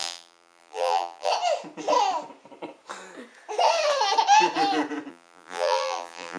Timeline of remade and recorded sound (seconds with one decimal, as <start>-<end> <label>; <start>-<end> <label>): 0.0-1.3 remade; 1.3-5.1 recorded; 5.1-6.4 remade